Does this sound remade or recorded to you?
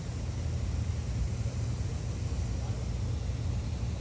recorded